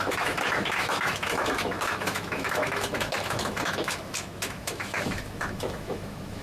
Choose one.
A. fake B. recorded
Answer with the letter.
A